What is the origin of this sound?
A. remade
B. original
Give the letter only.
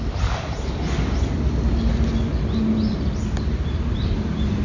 B